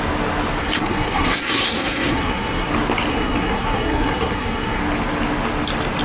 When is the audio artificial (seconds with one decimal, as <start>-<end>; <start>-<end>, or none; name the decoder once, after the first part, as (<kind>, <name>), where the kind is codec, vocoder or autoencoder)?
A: 0.6-2.7 (codec, SNAC); 3.1-4.8